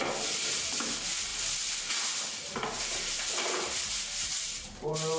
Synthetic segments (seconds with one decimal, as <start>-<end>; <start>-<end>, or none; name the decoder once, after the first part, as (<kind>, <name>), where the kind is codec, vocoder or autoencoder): none